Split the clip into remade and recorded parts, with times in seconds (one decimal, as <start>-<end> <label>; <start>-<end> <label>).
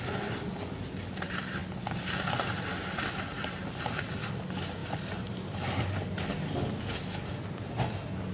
0.0-8.3 recorded